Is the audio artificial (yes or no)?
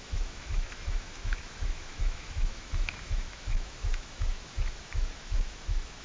yes